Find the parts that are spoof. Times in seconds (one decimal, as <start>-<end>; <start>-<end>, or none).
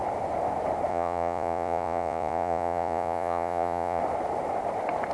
0.9-4.0